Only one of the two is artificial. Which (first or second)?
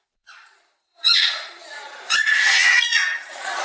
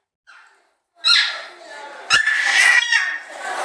first